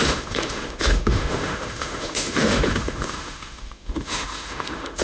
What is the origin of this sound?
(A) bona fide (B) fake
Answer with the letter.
B